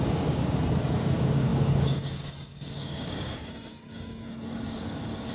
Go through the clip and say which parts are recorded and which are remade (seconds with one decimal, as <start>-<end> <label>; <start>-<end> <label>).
0.0-5.3 remade